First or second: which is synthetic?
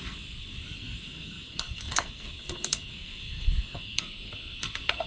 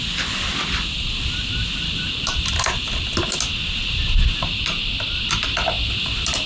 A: first